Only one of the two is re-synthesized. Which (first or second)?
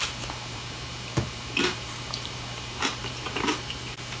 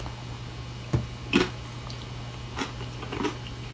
first